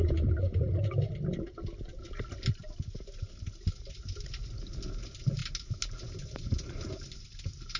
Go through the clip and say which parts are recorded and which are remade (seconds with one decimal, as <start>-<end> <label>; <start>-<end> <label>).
0.0-7.8 recorded